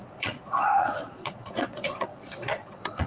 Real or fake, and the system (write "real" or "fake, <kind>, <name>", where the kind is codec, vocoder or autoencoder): fake, vocoder, Vocos